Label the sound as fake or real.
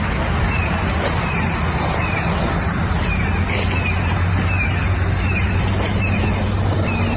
real